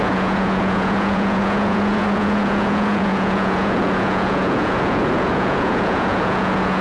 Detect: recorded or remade remade